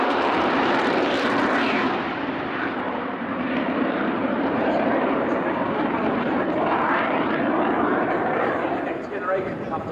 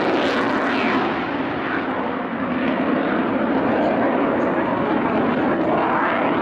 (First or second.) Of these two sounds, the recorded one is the second